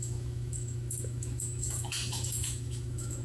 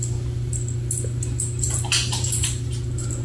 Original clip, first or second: second